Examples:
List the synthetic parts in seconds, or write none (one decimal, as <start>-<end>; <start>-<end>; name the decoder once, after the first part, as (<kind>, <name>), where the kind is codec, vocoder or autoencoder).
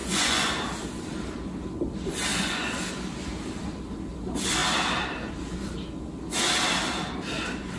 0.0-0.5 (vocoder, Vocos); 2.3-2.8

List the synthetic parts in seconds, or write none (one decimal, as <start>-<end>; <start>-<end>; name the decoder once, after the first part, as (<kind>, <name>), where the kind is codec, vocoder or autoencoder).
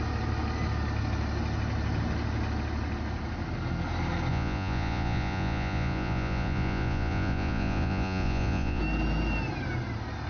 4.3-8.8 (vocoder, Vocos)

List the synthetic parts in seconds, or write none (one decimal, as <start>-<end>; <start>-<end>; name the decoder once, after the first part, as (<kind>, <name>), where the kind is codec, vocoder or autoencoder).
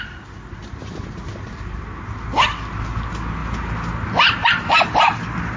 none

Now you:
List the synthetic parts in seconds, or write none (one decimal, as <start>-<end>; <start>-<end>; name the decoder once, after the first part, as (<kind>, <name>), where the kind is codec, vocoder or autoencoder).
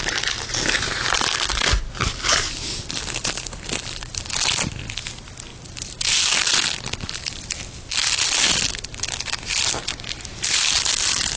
none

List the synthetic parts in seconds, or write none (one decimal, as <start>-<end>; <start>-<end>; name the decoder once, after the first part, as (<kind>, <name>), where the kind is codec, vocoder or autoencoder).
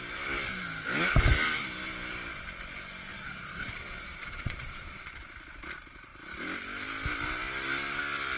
3.1-5.1 (vocoder, Vocos)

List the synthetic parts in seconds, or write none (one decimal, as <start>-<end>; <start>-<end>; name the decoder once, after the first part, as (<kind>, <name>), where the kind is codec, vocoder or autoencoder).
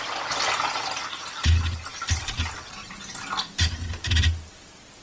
none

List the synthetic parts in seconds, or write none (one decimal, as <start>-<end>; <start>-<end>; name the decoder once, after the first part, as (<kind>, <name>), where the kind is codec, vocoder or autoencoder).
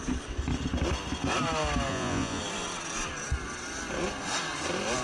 1.9-2.4 (vocoder, Vocos)